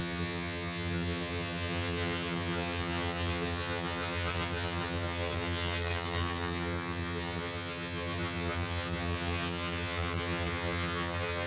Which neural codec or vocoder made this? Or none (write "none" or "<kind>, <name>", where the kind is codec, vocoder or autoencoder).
vocoder, HiFi-GAN